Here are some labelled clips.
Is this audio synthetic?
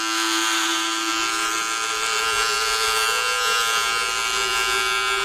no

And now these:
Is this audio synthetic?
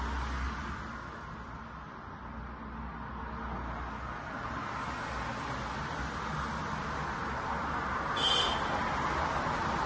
no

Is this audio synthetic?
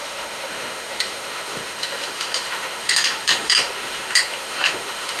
yes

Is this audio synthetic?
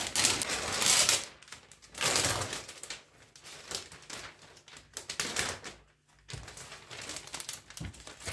no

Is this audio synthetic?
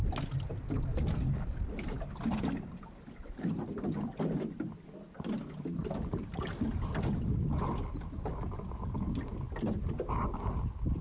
no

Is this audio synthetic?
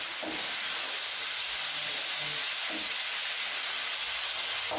no